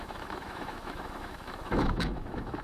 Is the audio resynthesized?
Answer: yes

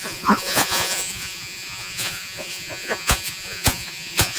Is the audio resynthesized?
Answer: yes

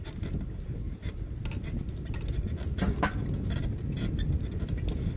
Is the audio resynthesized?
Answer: no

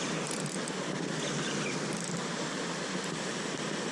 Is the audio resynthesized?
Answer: no